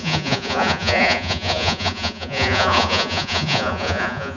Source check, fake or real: fake